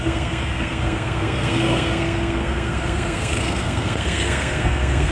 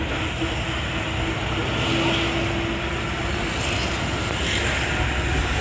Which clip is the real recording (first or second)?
second